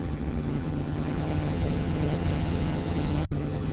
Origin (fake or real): fake